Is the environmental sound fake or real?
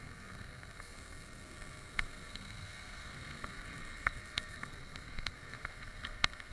fake